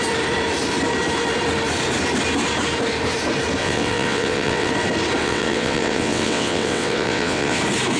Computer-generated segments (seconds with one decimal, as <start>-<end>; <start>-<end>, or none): 3.6-4.7; 5.2-7.6